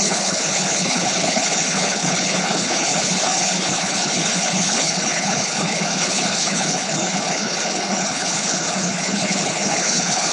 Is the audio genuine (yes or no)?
no